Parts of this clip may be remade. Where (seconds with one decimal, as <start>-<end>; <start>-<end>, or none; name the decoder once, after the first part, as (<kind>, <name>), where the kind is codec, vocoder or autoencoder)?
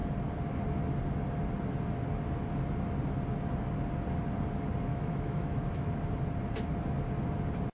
4.9-6.0 (autoencoder, DAC-VAE)